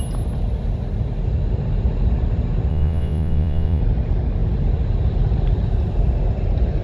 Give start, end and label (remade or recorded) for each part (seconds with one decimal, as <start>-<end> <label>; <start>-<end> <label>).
0.0-2.7 recorded; 2.7-3.8 remade; 3.8-6.8 recorded